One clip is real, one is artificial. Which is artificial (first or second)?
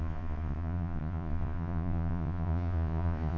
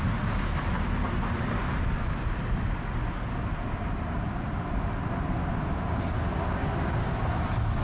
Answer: first